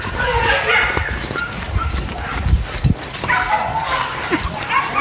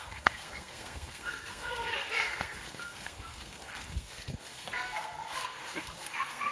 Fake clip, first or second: second